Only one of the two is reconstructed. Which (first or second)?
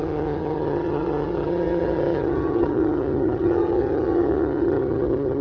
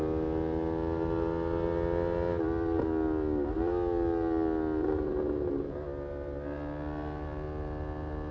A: first